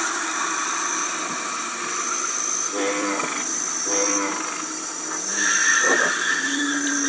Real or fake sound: fake